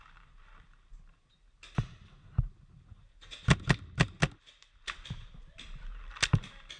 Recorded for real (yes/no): yes